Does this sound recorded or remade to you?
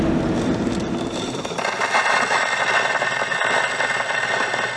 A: recorded